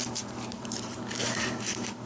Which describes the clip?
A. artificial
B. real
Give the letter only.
A